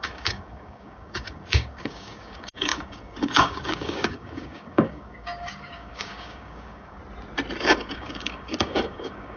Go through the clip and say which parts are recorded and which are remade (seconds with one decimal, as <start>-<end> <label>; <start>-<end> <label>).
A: 0.0-7.0 remade; 7.0-7.6 recorded; 7.6-9.4 remade